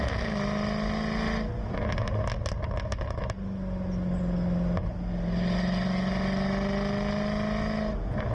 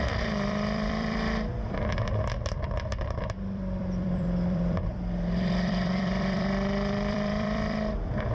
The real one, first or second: first